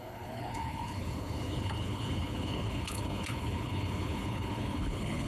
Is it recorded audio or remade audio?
remade